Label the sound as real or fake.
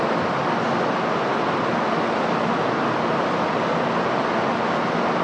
real